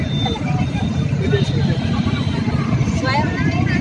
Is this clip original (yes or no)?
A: yes